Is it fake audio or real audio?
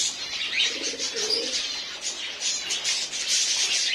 real